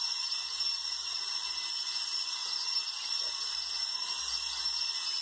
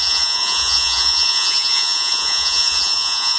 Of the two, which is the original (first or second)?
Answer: first